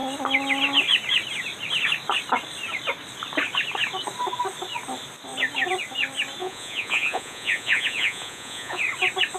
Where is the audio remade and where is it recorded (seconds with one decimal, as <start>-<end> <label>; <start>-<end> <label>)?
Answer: 0.0-6.4 recorded; 6.4-8.8 remade; 8.8-9.4 recorded